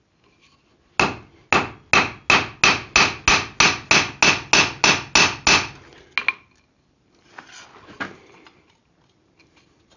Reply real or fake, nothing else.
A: real